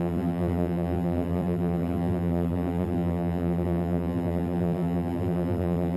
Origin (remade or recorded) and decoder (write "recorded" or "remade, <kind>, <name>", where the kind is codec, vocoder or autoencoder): remade, vocoder, BigVGAN v2